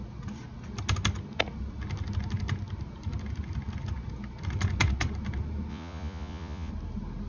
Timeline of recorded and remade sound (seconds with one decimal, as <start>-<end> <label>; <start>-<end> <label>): 0.0-5.7 recorded; 5.7-6.7 remade; 6.7-7.3 recorded